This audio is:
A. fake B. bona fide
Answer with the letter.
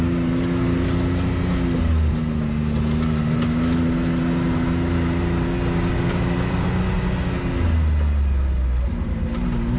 B